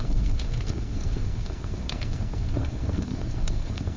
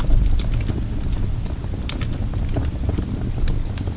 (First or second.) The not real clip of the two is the first